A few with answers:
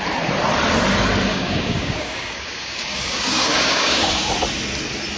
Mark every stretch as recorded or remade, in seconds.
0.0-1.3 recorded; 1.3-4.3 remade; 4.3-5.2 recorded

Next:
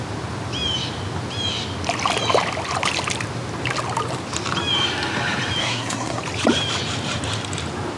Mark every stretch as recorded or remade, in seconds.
0.0-5.6 recorded; 5.6-6.2 remade; 6.2-8.0 recorded

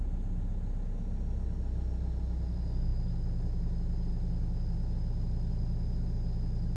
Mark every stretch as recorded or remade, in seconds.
0.0-6.8 recorded

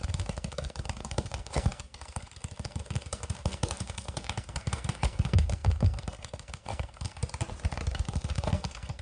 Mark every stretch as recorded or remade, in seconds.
0.0-7.2 remade; 7.2-7.9 recorded; 7.9-9.0 remade